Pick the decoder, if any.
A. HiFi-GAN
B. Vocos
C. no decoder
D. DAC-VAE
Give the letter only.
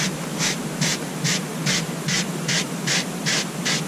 C